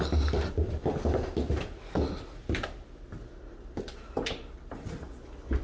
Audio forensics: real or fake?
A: real